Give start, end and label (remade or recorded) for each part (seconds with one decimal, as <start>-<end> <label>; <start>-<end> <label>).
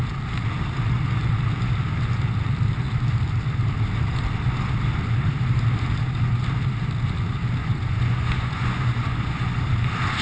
0.0-7.6 recorded; 7.6-9.6 remade; 9.6-10.2 recorded